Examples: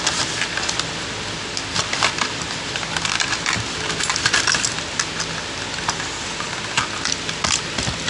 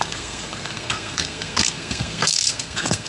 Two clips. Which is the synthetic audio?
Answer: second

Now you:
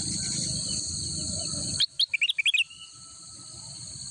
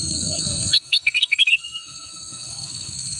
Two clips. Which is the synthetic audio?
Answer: second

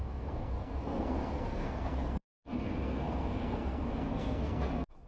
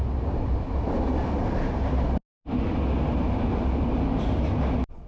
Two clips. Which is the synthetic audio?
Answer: first